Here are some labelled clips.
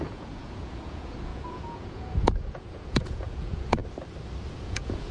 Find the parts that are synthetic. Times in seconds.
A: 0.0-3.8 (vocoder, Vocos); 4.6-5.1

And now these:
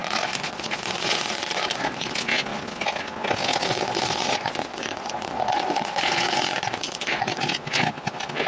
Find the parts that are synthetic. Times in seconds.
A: 0.0-2.1 (vocoder, Vocos); 3.6-7.4

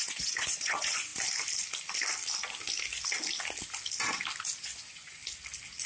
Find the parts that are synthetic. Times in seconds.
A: 0.0-1.1 (vocoder, Vocos); 4.6-5.2

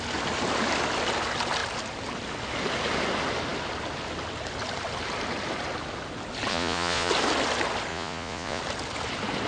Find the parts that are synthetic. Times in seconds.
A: 6.5-7.1 (vocoder, Vocos); 7.9-8.6

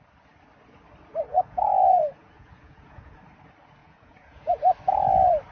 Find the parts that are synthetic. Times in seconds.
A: 1.3-3.2 (vocoder, Vocos); 3.8-4.6